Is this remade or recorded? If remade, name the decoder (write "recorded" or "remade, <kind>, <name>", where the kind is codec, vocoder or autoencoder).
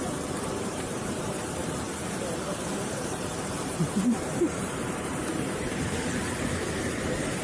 remade, vocoder, BigVGAN v2